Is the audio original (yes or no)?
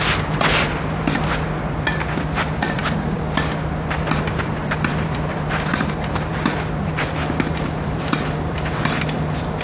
no